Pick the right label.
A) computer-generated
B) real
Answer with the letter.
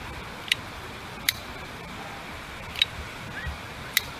B